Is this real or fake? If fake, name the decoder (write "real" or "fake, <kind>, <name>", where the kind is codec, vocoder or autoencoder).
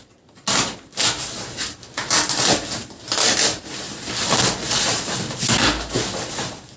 real